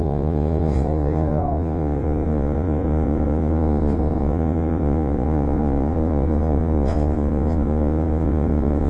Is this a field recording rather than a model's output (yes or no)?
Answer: no